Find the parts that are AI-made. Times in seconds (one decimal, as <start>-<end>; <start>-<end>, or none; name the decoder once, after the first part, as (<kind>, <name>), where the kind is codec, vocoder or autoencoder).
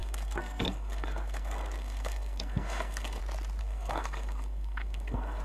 0.0-3.2 (codec, SNAC); 3.6-5.4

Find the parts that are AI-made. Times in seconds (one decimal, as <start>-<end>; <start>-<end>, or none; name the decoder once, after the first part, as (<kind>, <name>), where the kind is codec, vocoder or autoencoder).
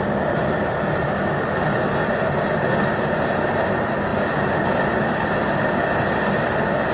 none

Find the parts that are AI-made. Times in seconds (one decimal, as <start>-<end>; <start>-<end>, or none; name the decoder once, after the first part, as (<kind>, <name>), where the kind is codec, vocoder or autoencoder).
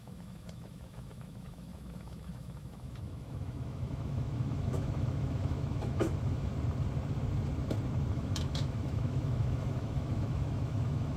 0.0-6.5 (autoencoder, DAC-VAE); 8.1-11.2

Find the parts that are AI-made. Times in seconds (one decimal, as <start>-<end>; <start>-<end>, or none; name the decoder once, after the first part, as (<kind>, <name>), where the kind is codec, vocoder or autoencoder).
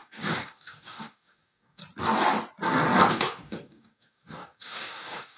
0.0-1.8 (codec, DAC); 3.1-5.4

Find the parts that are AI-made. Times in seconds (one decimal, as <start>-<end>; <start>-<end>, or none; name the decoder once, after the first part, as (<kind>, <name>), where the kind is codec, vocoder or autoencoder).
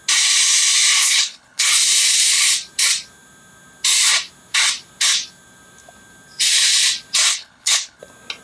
1.0-1.7 (codec, HILCodec); 7.3-8.0